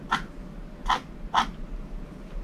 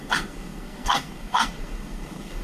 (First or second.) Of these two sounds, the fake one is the second